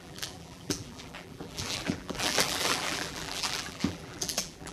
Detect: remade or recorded remade